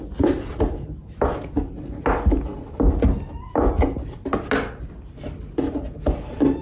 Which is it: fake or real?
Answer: real